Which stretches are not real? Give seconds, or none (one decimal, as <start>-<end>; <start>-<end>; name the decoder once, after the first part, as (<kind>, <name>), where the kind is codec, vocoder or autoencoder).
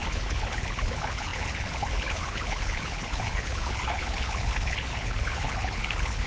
0.0-6.3 (codec, HILCodec)